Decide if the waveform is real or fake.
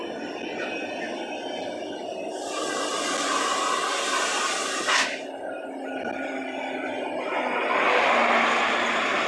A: real